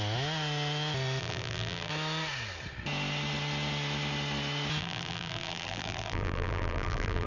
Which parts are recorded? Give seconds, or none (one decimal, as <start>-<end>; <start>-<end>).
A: 0.0-1.2; 1.9-4.8